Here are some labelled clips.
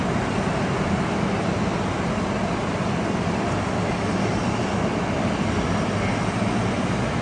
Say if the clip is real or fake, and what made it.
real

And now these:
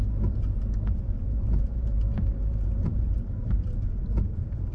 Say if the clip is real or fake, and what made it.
fake, vocoder, BigVGAN v2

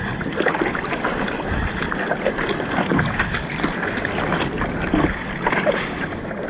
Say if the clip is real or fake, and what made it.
real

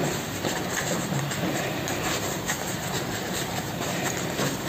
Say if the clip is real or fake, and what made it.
fake, vocoder, BigVGAN v2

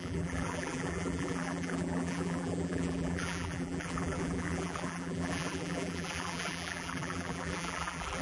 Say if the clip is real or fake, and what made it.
fake, vocoder, BigVGAN v2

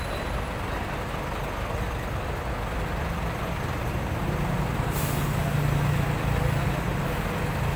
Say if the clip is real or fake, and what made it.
real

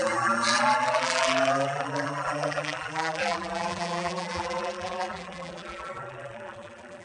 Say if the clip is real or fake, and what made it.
fake, vocoder, BigVGAN v2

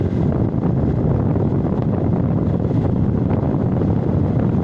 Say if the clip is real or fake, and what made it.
real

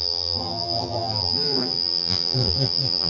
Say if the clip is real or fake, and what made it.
fake, vocoder, BigVGAN v2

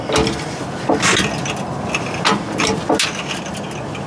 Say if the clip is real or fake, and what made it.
real